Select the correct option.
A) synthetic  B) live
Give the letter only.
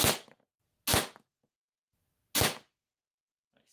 B